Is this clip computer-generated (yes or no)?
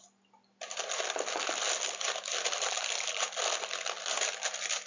no